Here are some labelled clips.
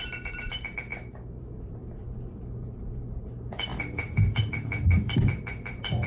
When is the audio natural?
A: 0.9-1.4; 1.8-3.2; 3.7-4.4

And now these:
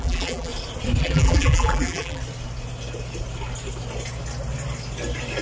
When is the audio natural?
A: 0.5-1.0; 2.2-5.4

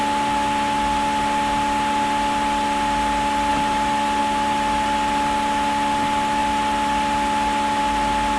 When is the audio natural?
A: 0.0-8.4

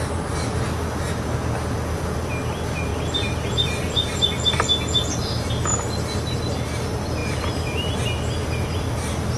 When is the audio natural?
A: 0.0-9.4

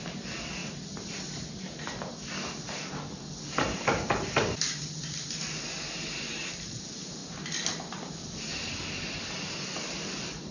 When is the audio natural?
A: 0.0-0.6; 3.2-7.2; 8.1-10.5